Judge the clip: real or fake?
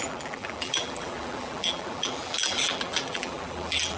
fake